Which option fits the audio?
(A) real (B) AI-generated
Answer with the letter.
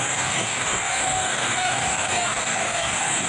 B